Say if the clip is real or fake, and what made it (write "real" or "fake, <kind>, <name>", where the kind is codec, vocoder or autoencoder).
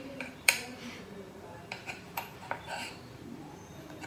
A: fake, vocoder, BigVGAN v2